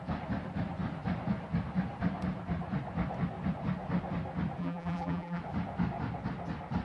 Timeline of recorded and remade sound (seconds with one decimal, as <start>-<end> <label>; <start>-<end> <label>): 0.0-4.6 recorded; 4.6-5.4 remade; 5.4-6.8 recorded